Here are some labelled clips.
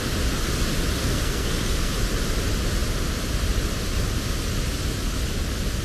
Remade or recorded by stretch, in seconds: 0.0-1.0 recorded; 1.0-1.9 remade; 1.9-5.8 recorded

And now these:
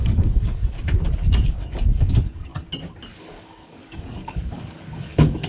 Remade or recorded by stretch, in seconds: 0.0-0.6 remade; 0.6-1.2 recorded; 1.2-2.5 remade; 2.5-3.2 recorded; 3.2-5.5 remade

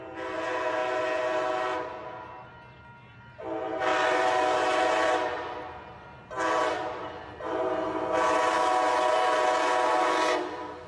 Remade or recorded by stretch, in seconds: 0.0-10.9 recorded

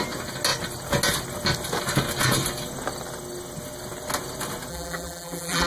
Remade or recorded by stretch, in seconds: 0.0-4.7 recorded; 4.7-5.7 remade

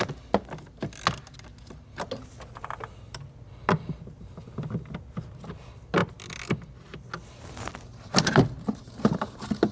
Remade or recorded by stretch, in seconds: 0.0-9.7 recorded

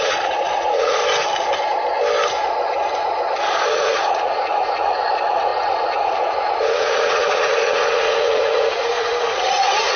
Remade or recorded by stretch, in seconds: 0.0-1.0 remade; 1.0-3.7 recorded; 3.7-10.0 remade

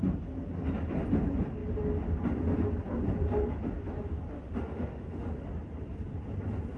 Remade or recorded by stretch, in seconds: 0.0-4.3 recorded; 4.3-5.3 remade; 5.3-6.8 recorded